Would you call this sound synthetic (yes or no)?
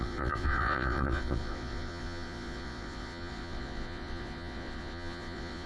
yes